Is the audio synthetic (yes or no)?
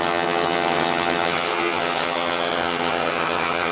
yes